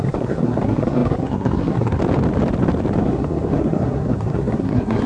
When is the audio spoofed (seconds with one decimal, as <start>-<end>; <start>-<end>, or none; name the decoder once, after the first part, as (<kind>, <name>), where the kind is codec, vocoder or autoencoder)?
0.0-2.0 (codec, SNAC); 3.0-5.1